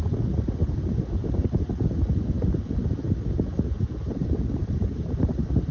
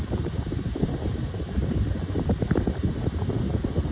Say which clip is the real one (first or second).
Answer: first